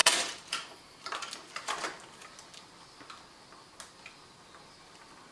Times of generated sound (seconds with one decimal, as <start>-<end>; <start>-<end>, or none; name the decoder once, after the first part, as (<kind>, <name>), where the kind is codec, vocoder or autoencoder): 0.0-1.3 (vocoder, BigVGAN v2)